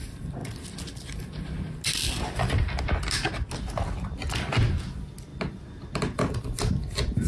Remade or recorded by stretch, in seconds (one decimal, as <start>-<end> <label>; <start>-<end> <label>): 0.0-7.3 recorded